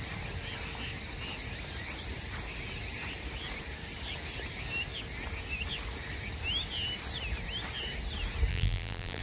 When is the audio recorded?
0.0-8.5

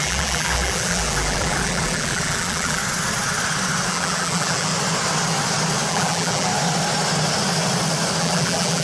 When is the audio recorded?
2.8-3.9; 4.7-5.9; 6.5-8.2

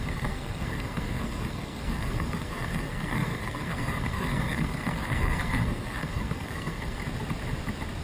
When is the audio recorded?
7.0-8.0

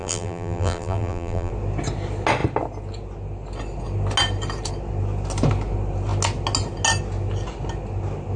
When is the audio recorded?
1.5-8.4

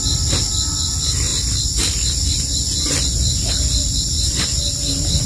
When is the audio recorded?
0.0-5.3

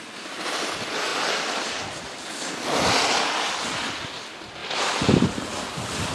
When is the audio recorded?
0.0-6.1

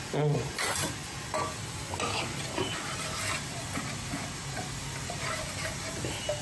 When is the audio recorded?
0.0-6.4